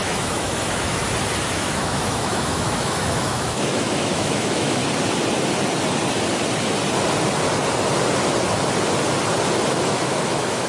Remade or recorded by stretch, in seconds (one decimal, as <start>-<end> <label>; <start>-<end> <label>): 0.0-1.0 remade; 1.0-1.5 recorded; 1.5-4.8 remade; 4.8-9.7 recorded; 9.7-10.7 remade